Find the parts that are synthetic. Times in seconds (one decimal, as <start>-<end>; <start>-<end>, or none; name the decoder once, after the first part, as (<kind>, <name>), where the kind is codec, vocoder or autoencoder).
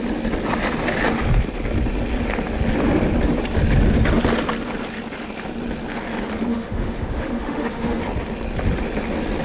6.5-8.0 (autoencoder, DAC-VAE)